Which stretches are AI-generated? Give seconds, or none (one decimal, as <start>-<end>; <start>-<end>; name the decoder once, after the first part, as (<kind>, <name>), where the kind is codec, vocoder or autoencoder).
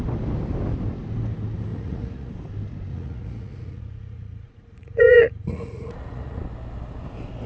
1.7-2.3 (vocoder, Vocos); 2.9-6.4